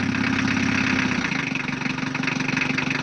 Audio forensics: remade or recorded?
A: recorded